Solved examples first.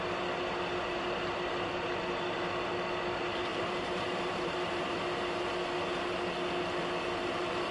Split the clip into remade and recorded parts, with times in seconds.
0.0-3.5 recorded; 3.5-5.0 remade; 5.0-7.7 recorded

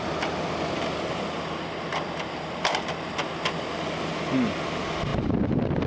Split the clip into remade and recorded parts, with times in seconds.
0.0-5.9 recorded

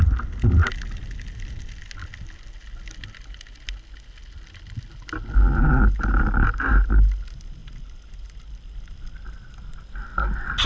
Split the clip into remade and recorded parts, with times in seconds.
0.0-7.6 recorded; 7.6-9.2 remade; 9.2-10.7 recorded

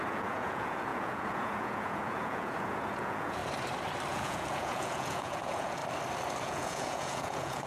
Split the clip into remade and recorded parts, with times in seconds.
0.0-3.4 remade; 3.4-4.1 recorded; 4.1-5.8 remade; 5.8-6.4 recorded; 6.4-7.7 remade

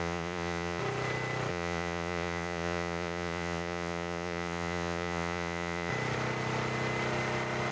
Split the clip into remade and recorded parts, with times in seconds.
0.0-0.8 remade; 0.8-1.5 recorded; 1.5-5.9 remade; 5.9-7.7 recorded